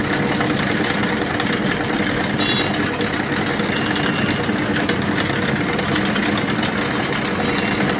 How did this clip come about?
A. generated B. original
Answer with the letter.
B